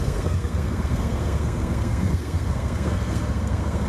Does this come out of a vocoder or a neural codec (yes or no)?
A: yes